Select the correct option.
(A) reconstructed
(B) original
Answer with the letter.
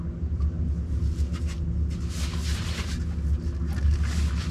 B